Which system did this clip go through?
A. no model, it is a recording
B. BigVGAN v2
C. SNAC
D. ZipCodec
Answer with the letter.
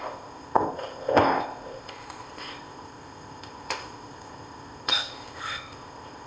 D